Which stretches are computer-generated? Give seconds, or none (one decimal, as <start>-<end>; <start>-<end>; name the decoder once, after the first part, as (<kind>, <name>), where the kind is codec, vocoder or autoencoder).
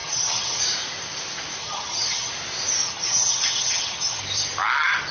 0.0-0.6 (vocoder, HiFi-GAN); 1.6-2.3; 2.8-4.2